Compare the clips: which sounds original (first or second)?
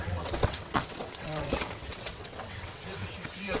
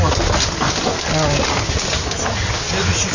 second